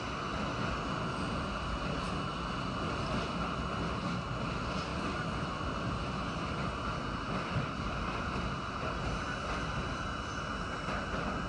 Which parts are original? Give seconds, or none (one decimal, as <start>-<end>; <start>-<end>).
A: 0.0-4.9; 9.0-11.5